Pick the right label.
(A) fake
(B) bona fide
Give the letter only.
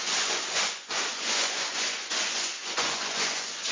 A